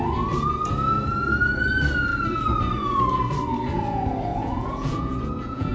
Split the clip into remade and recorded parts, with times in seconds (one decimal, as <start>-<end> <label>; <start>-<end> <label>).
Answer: 0.0-4.3 recorded; 4.3-5.7 remade